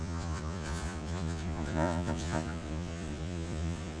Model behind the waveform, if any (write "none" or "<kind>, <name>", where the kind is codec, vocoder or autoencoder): vocoder, Vocos